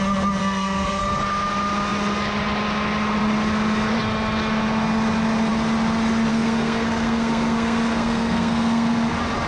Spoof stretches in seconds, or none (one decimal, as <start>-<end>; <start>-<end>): 0.4-1.0; 6.3-9.1

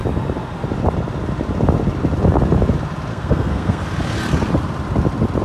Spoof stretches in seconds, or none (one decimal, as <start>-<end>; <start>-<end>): 3.1-3.8

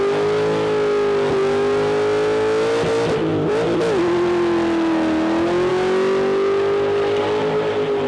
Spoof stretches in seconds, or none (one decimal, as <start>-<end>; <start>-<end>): none

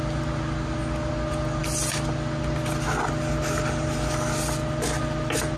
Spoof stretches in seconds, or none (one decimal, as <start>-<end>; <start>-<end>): none

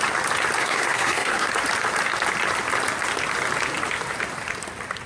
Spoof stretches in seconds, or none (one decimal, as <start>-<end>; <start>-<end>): 0.6-1.5

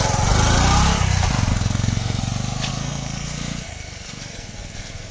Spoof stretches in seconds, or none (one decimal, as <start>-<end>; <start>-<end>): 1.5-2.2; 2.7-5.1

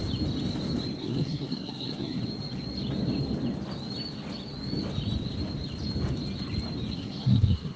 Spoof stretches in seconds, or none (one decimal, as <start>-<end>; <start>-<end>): 1.0-2.2; 6.9-7.8

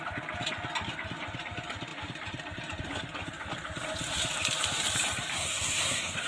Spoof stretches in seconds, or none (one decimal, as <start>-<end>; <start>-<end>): 5.3-6.3